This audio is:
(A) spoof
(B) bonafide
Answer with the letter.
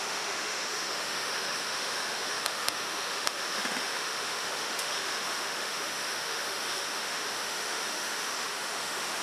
A